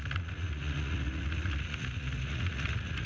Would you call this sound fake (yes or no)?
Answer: yes